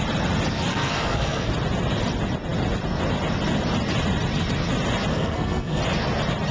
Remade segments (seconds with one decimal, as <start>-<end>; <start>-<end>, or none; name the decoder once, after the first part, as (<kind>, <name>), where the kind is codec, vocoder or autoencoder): 0.7-1.5 (codec, SNAC); 5.1-5.8